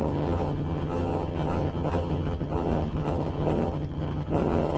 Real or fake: fake